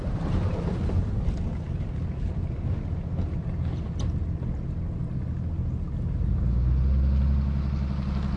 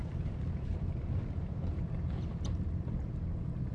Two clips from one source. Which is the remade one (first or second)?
second